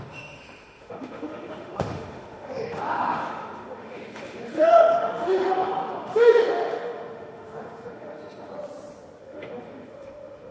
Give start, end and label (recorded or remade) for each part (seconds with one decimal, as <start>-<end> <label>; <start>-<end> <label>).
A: 0.0-8.5 remade; 8.5-9.2 recorded; 9.2-10.5 remade